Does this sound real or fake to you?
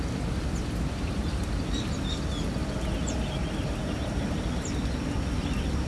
real